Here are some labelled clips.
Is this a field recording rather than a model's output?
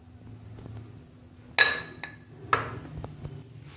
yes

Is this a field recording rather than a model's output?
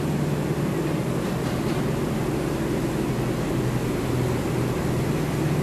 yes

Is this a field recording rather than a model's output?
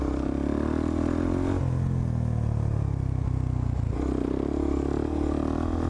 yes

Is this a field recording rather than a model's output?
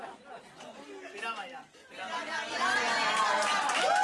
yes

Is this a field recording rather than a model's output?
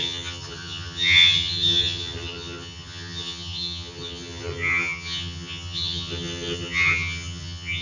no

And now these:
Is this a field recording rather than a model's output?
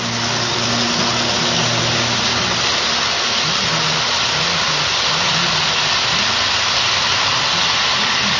yes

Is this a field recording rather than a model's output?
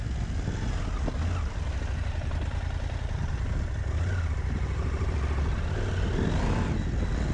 yes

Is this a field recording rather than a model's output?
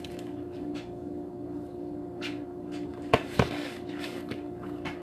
no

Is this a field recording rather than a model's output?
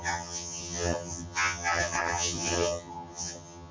no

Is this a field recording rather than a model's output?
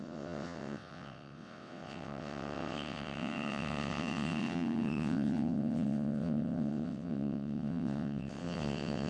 no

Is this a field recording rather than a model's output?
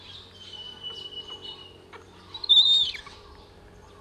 yes